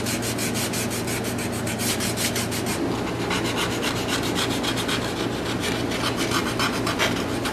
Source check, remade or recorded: recorded